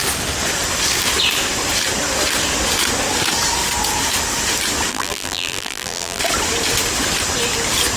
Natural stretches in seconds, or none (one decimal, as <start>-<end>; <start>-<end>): 0.0-4.9; 6.2-8.0

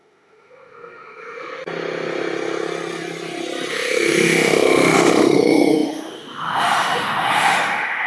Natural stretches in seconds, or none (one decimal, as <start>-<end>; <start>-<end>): 1.6-3.7

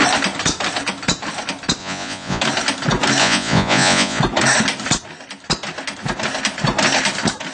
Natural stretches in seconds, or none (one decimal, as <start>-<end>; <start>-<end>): 0.0-1.8; 2.4-3.2; 4.2-7.5

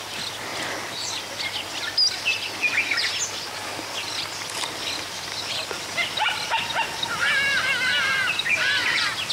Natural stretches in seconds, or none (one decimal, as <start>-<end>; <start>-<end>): 0.0-0.5; 1.2-4.0

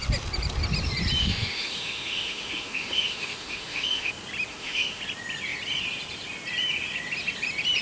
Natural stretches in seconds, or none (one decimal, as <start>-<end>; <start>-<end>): 0.0-1.2; 4.1-4.5; 5.0-7.8

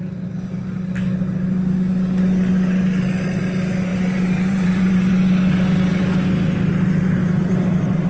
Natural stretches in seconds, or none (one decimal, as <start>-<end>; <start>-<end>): 0.0-3.9; 5.1-7.2

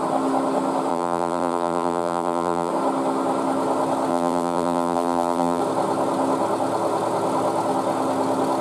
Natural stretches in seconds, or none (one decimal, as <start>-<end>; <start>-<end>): 0.0-0.9; 2.7-4.1; 5.6-8.6